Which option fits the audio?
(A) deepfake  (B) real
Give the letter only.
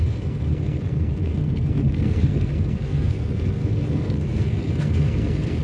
A